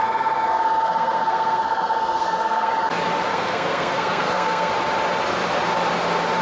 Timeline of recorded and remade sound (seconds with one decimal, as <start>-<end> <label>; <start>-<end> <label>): 0.0-2.7 remade; 2.7-3.3 recorded; 3.3-4.7 remade; 4.7-6.4 recorded